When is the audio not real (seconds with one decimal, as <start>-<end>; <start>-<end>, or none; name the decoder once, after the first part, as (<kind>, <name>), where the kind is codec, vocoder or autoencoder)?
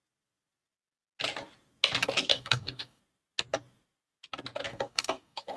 2.3-3.0 (codec, DAC); 4.7-5.6